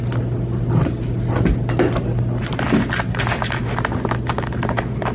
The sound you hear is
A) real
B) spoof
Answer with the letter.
A